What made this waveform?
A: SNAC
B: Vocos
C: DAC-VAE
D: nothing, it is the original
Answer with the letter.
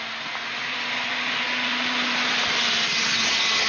D